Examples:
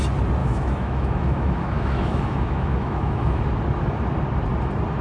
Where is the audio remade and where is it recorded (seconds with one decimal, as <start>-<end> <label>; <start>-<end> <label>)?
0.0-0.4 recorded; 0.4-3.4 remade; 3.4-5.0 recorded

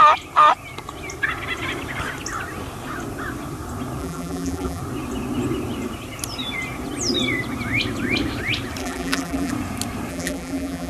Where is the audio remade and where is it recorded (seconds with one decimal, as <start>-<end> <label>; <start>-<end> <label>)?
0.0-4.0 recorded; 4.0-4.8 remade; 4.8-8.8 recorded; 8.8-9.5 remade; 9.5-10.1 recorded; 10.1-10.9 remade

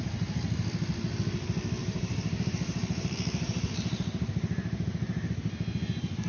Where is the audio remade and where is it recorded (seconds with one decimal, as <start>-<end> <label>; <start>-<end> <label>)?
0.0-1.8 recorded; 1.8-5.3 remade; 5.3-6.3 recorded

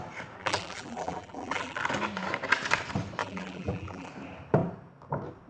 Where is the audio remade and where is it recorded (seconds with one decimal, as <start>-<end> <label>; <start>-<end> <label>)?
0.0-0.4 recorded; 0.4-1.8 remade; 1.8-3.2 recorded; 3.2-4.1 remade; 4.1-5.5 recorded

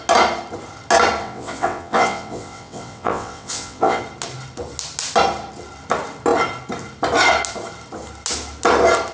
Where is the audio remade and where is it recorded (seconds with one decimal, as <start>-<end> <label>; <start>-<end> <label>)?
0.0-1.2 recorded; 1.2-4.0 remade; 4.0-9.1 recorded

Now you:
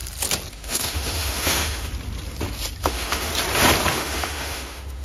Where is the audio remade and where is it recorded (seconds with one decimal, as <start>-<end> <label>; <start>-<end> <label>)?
0.0-0.5 recorded; 0.5-1.9 remade; 1.9-2.8 recorded; 2.8-3.3 remade; 3.3-3.9 recorded; 3.9-5.0 remade

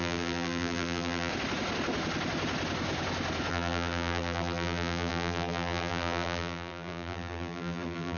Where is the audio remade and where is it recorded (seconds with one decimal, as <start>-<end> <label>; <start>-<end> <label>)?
0.0-1.3 remade; 1.3-3.5 recorded; 3.5-8.2 remade